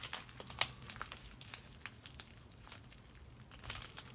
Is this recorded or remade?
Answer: recorded